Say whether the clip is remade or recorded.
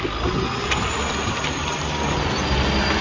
recorded